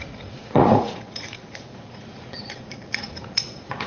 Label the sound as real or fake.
fake